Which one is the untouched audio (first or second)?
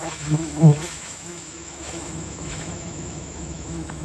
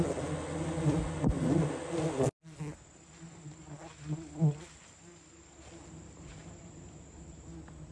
second